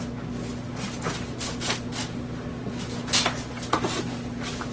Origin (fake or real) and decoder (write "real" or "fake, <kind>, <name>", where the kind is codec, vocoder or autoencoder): real